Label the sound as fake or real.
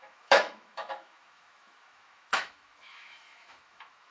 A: fake